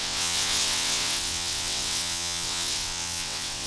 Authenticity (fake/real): fake